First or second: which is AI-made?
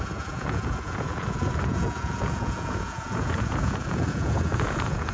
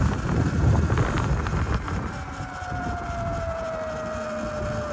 first